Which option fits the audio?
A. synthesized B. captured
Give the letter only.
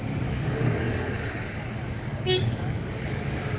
A